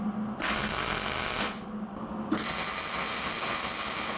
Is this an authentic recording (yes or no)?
yes